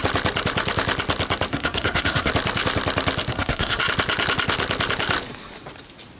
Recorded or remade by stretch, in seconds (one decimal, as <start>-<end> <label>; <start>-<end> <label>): 0.0-1.5 recorded; 1.5-2.3 remade; 2.3-3.3 recorded; 3.3-3.8 remade; 3.8-6.2 recorded